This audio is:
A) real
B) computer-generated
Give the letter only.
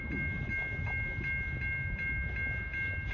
A